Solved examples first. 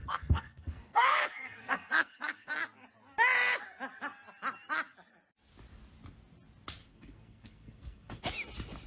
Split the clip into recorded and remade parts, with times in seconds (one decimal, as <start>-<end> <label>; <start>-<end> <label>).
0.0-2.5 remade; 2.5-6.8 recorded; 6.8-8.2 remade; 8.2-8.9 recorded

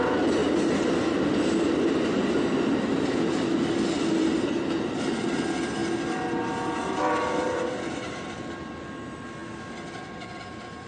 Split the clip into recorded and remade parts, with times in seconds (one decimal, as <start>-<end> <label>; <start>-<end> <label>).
0.0-10.9 recorded

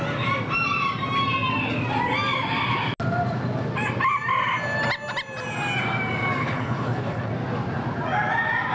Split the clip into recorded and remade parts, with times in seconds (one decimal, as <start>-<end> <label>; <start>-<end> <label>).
0.0-6.4 recorded; 6.4-7.3 remade; 7.3-8.7 recorded

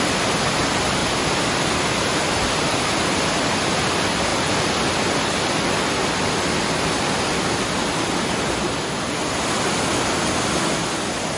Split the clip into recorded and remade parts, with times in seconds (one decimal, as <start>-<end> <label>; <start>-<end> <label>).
0.0-11.4 recorded

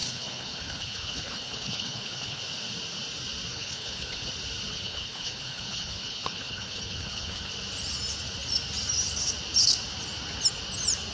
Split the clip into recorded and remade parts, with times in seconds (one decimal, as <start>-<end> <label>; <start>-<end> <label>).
0.0-2.4 remade; 2.4-3.5 recorded; 3.5-4.3 remade; 4.3-4.7 recorded; 4.7-7.5 remade; 7.5-11.1 recorded

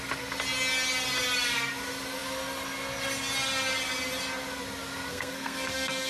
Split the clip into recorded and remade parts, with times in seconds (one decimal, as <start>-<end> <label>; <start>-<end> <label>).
0.0-5.1 recorded; 5.1-6.1 remade

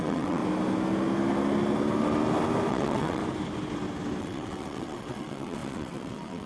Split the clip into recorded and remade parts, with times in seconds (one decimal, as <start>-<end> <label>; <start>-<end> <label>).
0.0-0.4 remade; 0.4-2.7 recorded; 2.7-3.2 remade; 3.2-4.2 recorded; 4.2-6.5 remade